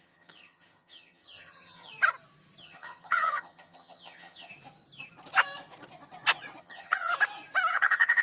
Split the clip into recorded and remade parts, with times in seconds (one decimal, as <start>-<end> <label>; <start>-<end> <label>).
0.0-1.9 remade; 1.9-2.6 recorded; 2.6-4.5 remade; 4.5-6.6 recorded; 6.6-7.1 remade; 7.1-7.7 recorded; 7.7-8.2 remade